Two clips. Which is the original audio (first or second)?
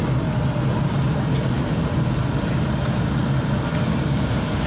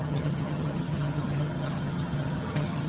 first